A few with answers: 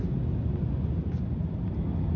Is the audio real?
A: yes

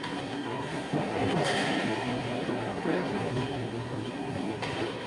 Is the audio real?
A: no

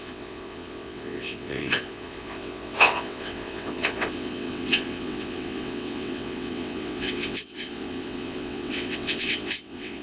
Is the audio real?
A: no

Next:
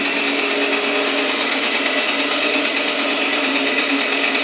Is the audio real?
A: yes